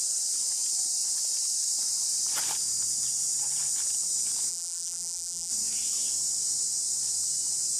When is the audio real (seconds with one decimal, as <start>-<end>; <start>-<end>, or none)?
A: 0.0-4.5; 5.5-7.8